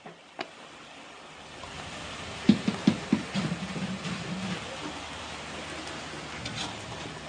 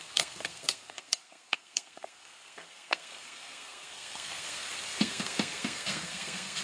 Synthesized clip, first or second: second